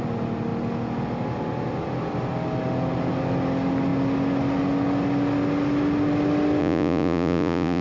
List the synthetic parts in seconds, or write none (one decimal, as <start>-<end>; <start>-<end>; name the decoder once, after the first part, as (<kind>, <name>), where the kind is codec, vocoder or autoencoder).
6.6-7.8 (vocoder, Vocos)